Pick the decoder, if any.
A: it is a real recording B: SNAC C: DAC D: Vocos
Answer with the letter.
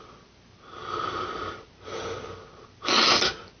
A